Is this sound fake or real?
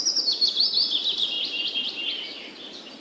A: real